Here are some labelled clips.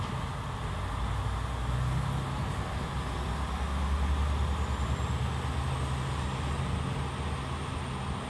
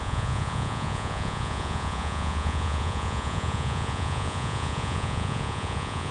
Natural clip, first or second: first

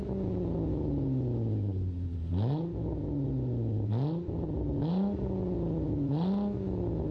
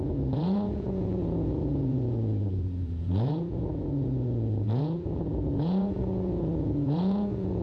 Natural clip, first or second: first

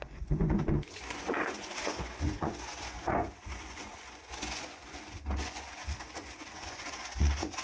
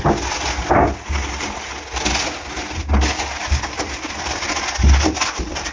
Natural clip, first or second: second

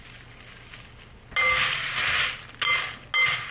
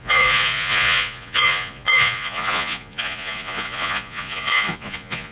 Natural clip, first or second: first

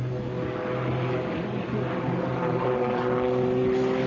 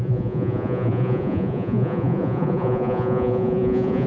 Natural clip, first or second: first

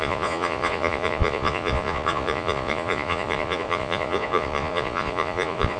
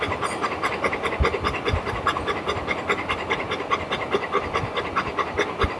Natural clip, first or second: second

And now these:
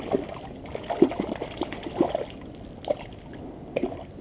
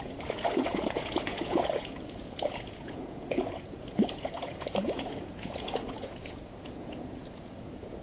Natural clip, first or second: first